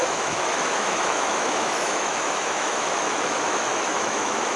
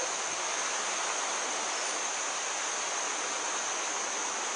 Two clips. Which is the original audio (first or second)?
second